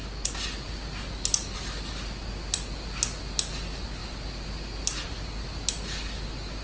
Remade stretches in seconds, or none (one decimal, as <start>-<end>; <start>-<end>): none